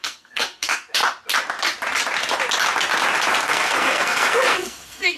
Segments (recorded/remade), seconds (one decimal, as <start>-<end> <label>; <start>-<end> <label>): 0.0-1.0 remade; 1.0-3.4 recorded; 3.4-5.2 remade